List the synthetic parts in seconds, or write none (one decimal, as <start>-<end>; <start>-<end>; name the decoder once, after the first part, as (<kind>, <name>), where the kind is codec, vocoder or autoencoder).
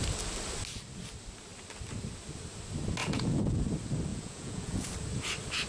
3.0-3.6 (vocoder, Vocos); 4.1-4.9